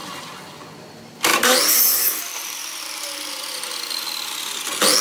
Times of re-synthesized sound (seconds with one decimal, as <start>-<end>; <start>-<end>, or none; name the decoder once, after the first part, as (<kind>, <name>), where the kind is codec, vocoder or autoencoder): 1.3-3.6 (vocoder, BigVGAN v2)